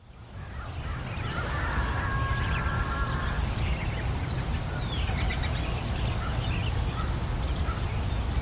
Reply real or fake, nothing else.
real